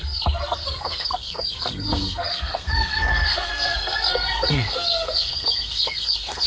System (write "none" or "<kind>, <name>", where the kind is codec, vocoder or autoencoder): codec, SNAC